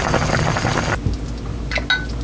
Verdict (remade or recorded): recorded